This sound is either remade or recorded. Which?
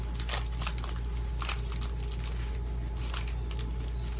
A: recorded